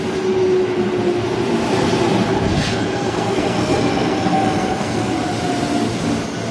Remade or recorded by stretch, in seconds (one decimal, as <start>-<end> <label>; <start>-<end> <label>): 0.0-2.5 recorded; 2.5-5.1 remade; 5.1-6.5 recorded